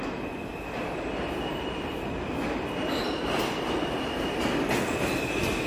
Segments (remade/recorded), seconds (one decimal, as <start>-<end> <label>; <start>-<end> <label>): 0.0-5.7 recorded